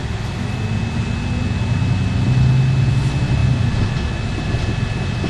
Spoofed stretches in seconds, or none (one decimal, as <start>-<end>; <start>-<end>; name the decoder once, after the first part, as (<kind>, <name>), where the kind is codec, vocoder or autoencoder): none